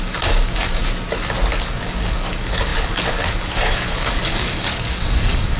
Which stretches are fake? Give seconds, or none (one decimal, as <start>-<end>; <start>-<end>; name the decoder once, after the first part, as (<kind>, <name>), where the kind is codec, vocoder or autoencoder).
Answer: 0.0-0.8 (codec, DAC); 1.5-5.6